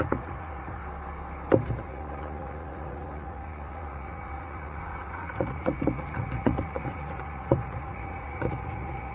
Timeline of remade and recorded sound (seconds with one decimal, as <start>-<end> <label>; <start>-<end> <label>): 0.0-0.8 remade; 0.8-1.7 recorded; 1.7-9.1 remade